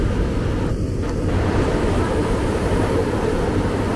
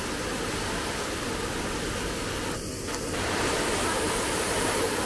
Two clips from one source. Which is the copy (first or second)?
first